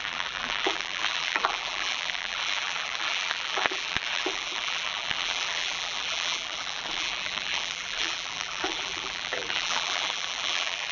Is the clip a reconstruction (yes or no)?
yes